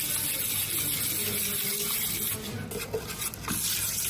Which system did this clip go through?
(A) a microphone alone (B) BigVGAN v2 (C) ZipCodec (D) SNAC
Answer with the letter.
A